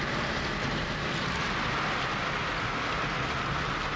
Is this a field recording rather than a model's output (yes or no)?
yes